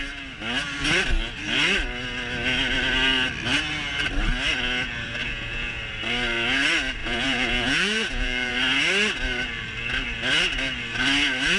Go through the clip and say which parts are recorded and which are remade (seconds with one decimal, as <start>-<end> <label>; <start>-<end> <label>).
0.0-5.2 recorded; 5.2-5.8 remade; 5.8-7.0 recorded; 7.0-8.5 remade; 8.5-11.6 recorded